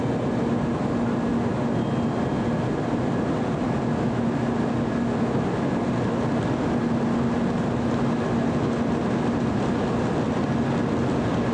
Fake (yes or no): no